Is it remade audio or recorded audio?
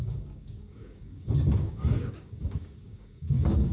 remade